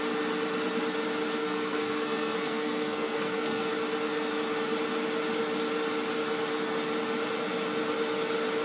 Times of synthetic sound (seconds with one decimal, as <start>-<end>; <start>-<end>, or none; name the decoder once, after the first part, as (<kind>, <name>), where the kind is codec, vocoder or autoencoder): 1.4-3.7 (codec, SNAC)